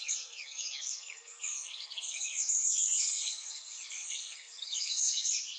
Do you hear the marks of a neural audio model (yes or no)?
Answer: yes